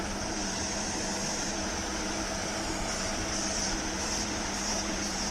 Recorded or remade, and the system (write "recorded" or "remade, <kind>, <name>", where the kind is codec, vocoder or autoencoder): remade, vocoder, BigVGAN v2